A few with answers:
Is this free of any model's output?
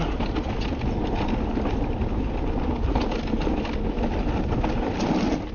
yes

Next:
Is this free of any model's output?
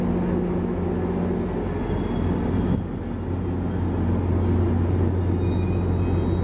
yes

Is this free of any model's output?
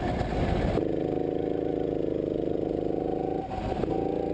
yes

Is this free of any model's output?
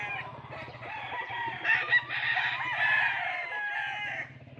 yes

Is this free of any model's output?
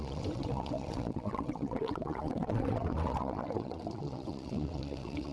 no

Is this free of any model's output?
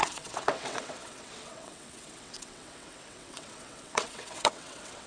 no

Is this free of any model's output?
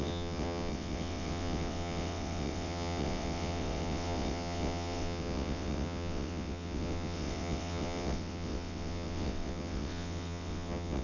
no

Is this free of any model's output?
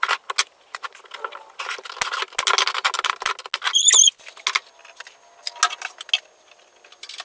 yes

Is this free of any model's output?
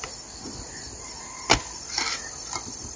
yes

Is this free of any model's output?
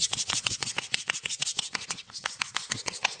no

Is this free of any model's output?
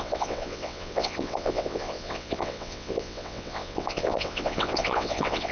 no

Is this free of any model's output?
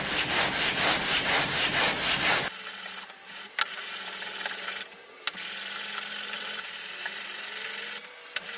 yes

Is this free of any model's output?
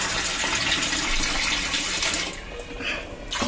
yes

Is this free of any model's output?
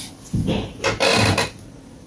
yes